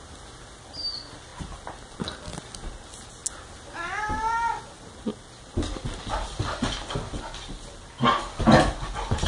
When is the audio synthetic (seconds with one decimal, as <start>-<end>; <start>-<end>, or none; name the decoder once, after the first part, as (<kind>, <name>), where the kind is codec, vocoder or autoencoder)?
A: none